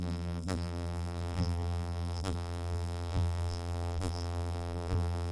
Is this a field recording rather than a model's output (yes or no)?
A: no